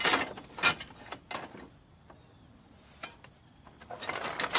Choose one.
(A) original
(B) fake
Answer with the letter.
A